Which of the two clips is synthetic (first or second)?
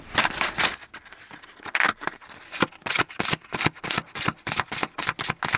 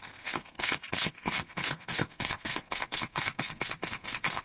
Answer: second